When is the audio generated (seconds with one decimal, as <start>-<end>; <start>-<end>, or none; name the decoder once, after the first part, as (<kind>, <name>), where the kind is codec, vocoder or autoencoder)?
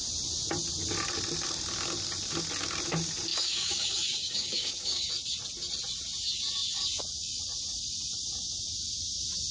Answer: 3.3-5.1 (codec, DAC)